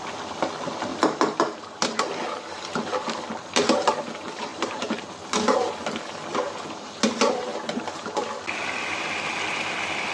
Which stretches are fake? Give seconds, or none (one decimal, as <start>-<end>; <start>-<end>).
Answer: 0.9-2.0; 4.5-5.0